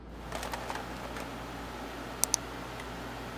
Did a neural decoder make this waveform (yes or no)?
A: no